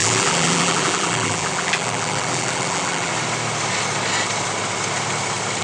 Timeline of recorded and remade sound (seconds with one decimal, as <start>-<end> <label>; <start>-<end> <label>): 0.0-3.1 remade; 3.1-5.6 recorded